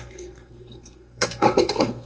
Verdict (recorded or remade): remade